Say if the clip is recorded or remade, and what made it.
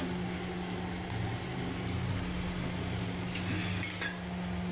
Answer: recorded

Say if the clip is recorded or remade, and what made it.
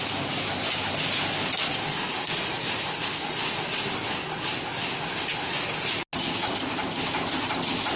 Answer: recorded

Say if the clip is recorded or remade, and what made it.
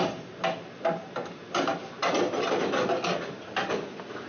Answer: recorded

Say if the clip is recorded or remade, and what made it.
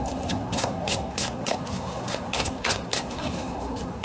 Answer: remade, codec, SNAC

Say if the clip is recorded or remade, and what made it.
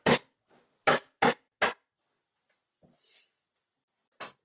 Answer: recorded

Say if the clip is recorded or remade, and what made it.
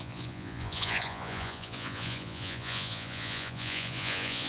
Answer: remade, vocoder, Vocos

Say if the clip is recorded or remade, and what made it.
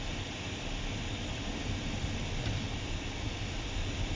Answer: recorded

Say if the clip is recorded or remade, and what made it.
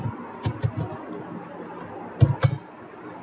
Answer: recorded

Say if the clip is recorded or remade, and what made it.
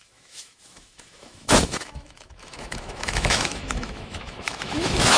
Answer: remade, autoencoder, DAC-VAE